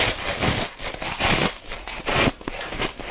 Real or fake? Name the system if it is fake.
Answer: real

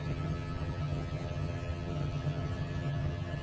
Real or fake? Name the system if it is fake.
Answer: fake, vocoder, HiFi-GAN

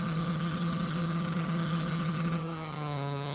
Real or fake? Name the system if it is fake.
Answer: fake, vocoder, HiFi-GAN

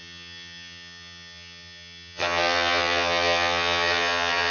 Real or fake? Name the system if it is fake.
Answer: fake, vocoder, HiFi-GAN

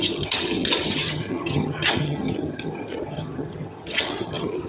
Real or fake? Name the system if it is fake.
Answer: fake, vocoder, HiFi-GAN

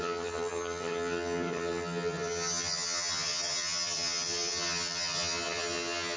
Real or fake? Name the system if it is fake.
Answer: fake, vocoder, HiFi-GAN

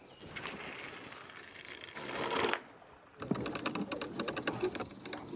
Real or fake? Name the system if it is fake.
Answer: real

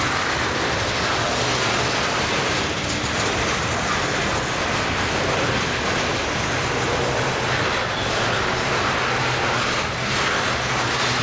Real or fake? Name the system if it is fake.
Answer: real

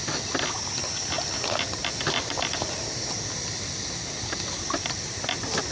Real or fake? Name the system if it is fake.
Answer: real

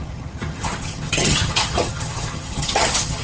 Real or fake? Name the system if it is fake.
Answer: fake, vocoder, HiFi-GAN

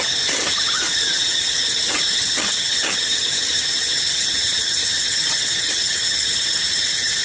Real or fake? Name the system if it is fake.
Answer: fake, vocoder, HiFi-GAN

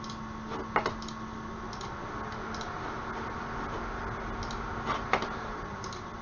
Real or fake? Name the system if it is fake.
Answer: real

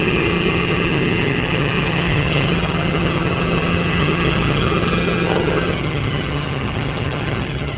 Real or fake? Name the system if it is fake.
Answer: fake, vocoder, HiFi-GAN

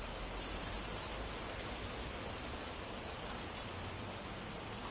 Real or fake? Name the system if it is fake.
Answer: real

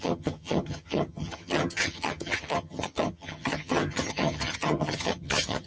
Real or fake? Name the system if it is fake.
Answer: fake, vocoder, HiFi-GAN